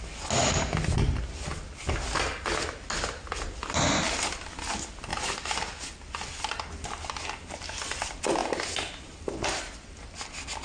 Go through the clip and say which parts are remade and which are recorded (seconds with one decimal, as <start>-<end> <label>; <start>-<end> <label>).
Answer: 0.0-10.6 recorded